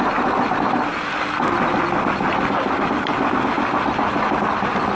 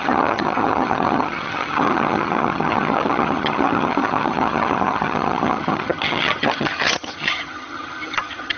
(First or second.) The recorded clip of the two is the first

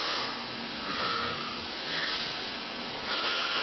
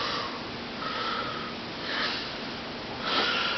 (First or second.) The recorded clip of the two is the second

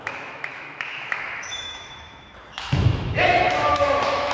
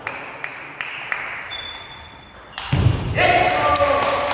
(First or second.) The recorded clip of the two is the second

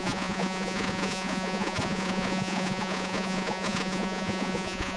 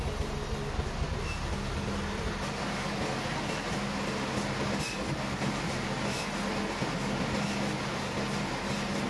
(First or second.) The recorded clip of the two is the second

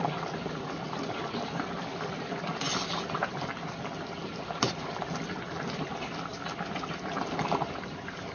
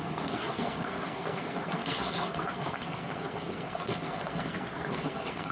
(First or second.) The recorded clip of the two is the first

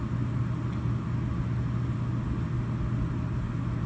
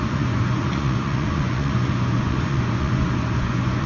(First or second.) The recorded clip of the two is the first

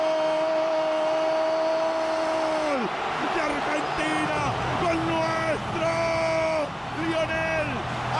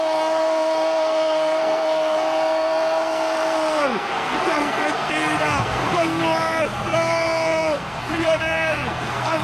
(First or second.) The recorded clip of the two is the first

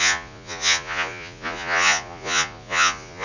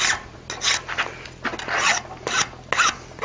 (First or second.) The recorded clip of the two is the second